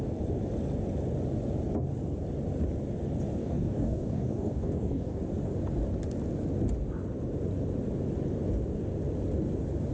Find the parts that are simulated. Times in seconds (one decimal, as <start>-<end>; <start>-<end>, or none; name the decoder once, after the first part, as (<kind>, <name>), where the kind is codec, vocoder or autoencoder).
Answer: 3.4-5.2 (codec, DAC)